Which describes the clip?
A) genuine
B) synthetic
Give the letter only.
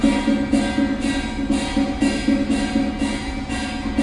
A